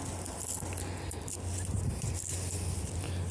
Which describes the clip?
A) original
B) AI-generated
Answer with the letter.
A